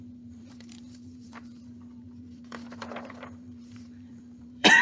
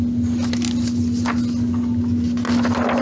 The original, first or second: second